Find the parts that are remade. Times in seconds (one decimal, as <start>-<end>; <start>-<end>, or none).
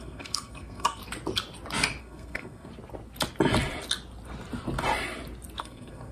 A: 0.0-1.0; 2.0-2.7; 5.6-6.1